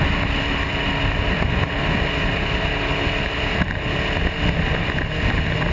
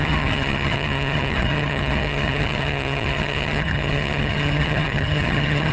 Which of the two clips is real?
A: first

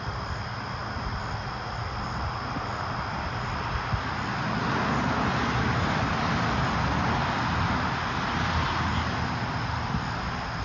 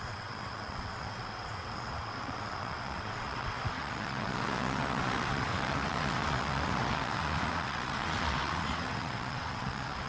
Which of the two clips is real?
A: first